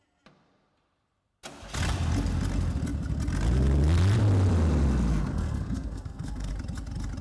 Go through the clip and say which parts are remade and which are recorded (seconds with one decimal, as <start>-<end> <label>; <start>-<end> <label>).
0.0-5.1 recorded; 5.1-6.5 remade; 6.5-7.2 recorded